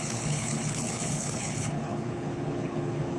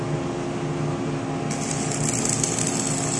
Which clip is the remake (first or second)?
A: first